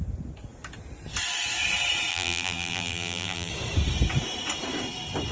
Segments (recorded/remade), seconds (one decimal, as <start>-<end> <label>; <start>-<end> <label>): 0.0-2.1 recorded; 2.1-3.5 remade; 3.5-5.3 recorded